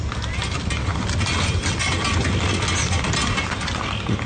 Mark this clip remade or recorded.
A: recorded